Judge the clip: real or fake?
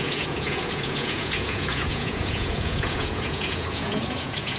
fake